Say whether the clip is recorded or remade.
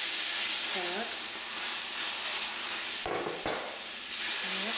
recorded